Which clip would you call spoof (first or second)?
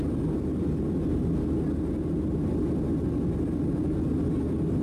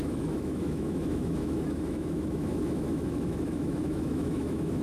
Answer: second